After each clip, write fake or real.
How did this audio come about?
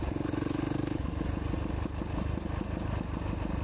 real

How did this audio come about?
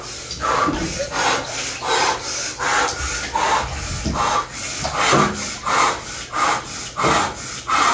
real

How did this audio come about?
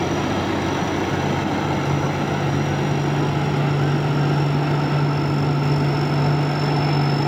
real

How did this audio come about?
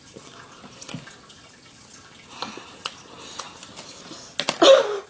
real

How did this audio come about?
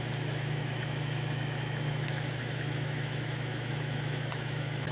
fake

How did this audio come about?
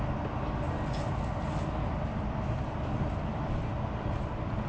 real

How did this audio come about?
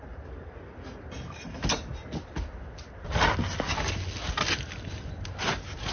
real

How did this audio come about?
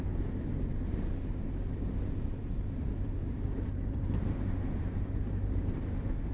fake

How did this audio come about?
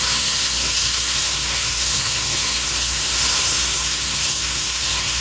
fake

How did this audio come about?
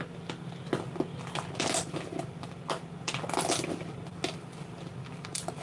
real